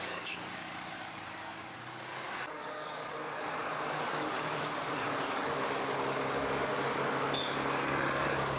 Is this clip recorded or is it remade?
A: remade